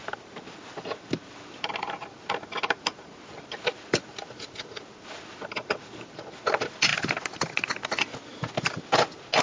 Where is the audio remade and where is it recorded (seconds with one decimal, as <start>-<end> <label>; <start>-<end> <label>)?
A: 0.0-9.4 recorded